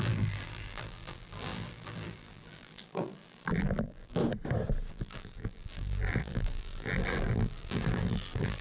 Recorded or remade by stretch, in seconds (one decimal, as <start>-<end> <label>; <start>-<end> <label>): 0.0-4.2 remade; 4.2-4.9 recorded; 4.9-8.6 remade